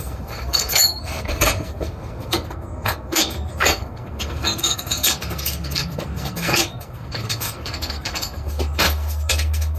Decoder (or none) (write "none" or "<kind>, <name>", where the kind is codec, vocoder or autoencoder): codec, SNAC